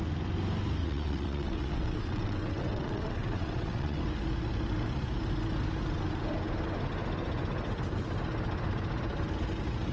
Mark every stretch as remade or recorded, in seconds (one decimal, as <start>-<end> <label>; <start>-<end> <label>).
0.0-0.8 recorded; 0.8-4.0 remade; 4.0-9.9 recorded